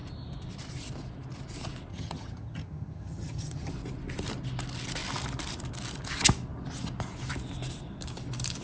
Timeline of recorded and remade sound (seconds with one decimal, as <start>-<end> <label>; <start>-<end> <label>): 0.0-1.9 recorded; 1.9-3.7 remade; 3.7-8.6 recorded

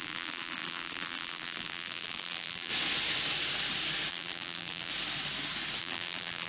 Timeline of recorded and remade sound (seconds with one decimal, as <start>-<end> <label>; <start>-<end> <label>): 0.0-2.7 remade; 2.7-4.1 recorded; 4.1-4.9 remade; 4.9-5.8 recorded; 5.8-6.5 remade

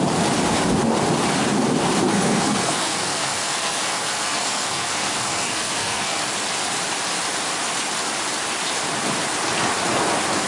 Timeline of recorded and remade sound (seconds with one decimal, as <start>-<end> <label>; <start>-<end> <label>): 0.0-2.1 recorded; 2.1-6.2 remade; 6.2-10.5 recorded

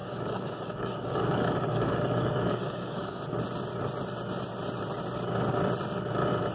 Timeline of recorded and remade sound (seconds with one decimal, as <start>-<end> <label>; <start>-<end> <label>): 0.0-3.2 remade; 3.2-6.5 recorded

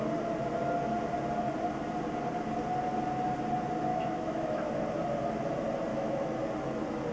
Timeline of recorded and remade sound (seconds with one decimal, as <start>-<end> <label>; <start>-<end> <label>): 0.0-3.9 recorded; 3.9-4.7 remade; 4.7-5.9 recorded; 5.9-6.4 remade; 6.4-7.1 recorded

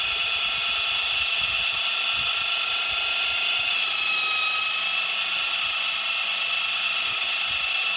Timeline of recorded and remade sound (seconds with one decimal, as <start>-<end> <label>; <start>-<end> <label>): 0.0-8.0 recorded

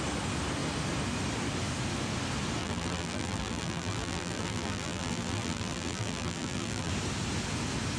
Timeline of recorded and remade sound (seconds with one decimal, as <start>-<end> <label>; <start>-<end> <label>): 0.0-2.6 recorded; 2.6-6.9 remade; 6.9-8.0 recorded